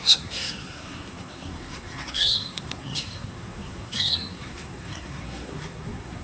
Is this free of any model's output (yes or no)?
no